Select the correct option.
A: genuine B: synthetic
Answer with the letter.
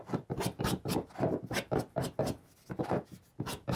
A